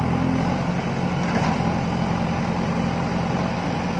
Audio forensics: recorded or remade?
recorded